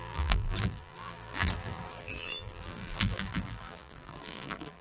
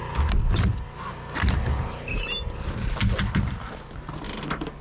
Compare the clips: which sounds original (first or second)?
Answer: second